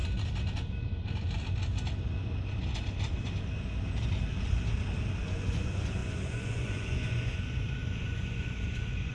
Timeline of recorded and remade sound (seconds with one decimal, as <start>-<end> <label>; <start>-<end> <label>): 0.0-5.2 recorded; 5.2-9.1 remade